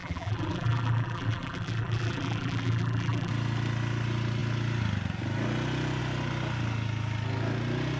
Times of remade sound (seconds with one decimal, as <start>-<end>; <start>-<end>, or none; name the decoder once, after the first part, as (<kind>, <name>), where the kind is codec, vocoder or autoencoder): 0.0-3.3 (vocoder, BigVGAN v2)